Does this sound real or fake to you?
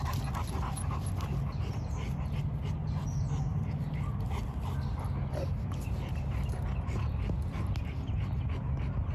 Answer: real